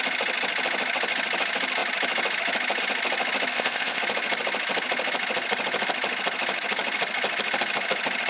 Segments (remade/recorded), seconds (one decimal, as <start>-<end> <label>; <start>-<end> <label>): 0.0-3.5 recorded; 3.5-4.0 remade; 4.0-8.3 recorded